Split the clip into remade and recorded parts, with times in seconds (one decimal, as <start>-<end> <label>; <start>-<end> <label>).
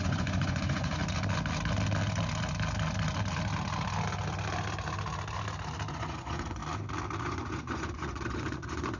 0.0-1.0 remade; 1.0-5.9 recorded; 5.9-6.6 remade; 6.6-7.2 recorded; 7.2-9.0 remade